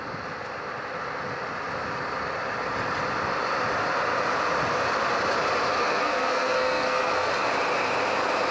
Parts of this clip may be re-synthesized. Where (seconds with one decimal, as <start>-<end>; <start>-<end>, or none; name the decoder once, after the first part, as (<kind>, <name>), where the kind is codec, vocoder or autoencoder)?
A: 5.8-7.3 (codec, SNAC)